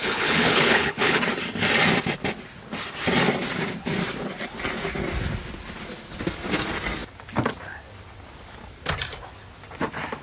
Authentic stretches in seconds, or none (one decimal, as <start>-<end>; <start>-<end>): 1.2-10.2